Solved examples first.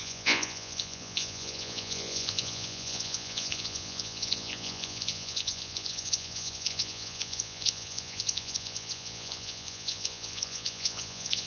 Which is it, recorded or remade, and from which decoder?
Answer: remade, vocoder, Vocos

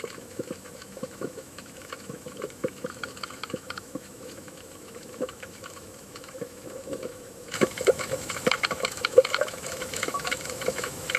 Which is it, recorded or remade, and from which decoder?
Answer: remade, autoencoder, DAC-VAE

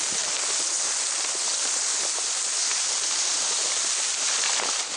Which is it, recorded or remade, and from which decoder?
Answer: recorded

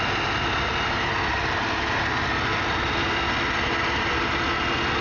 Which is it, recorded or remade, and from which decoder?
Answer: recorded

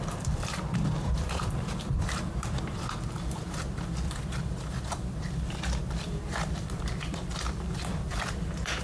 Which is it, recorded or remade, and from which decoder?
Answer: remade, vocoder, BigVGAN v2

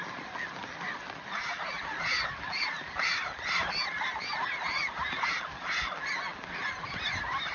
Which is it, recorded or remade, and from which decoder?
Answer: recorded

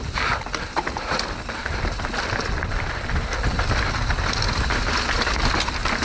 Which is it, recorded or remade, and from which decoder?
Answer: recorded